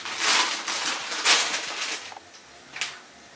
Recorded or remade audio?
recorded